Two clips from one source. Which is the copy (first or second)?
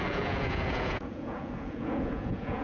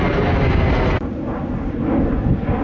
first